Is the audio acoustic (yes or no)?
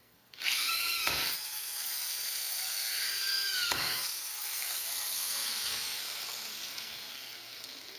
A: no